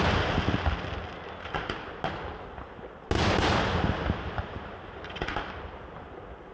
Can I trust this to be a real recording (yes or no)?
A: yes